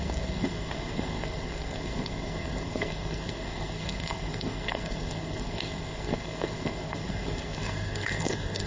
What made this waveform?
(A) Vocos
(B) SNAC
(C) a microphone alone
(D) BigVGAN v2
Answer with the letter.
B